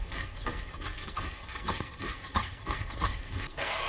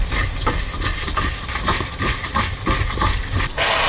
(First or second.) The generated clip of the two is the first